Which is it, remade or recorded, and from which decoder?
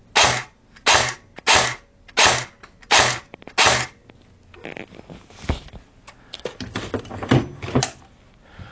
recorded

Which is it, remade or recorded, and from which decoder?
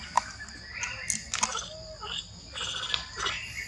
recorded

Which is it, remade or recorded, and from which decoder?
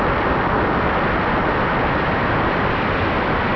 recorded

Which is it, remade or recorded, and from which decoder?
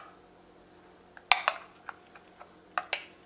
recorded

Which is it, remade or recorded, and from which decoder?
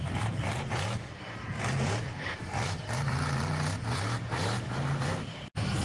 recorded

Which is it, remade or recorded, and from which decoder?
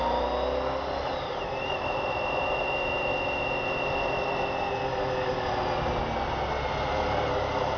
recorded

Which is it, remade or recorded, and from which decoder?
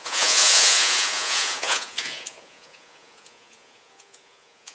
remade, vocoder, Vocos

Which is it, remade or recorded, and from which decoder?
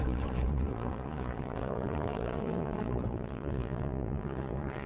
remade, vocoder, Vocos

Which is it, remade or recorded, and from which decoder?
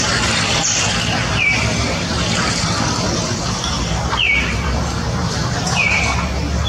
remade, vocoder, BigVGAN v2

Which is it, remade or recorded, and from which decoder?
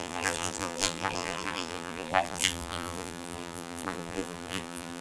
remade, vocoder, BigVGAN v2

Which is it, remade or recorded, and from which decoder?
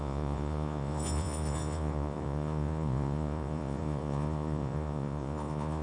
remade, vocoder, Vocos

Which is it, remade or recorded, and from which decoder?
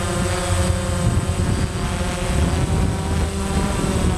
recorded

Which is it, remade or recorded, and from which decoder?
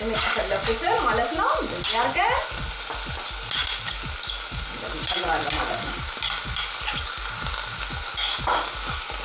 recorded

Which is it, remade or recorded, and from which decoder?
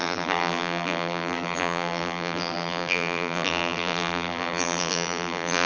remade, vocoder, BigVGAN v2